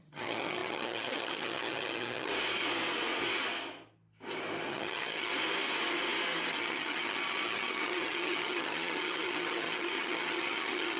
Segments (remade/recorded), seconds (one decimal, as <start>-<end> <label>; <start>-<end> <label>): 0.0-2.3 remade; 2.3-4.7 recorded; 4.7-5.3 remade; 5.3-6.5 recorded; 6.5-11.0 remade